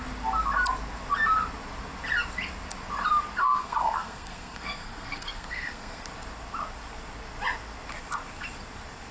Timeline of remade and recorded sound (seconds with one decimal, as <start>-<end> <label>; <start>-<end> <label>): 0.0-3.4 recorded; 3.4-6.0 remade; 6.0-9.1 recorded